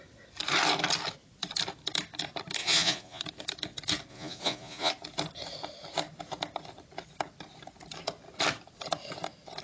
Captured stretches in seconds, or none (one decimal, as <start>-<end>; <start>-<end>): 0.0-2.6; 3.2-4.1; 4.9-9.6